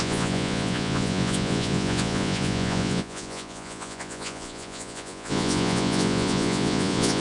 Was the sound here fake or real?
fake